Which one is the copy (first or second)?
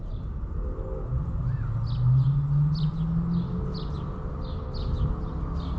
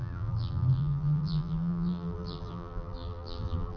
second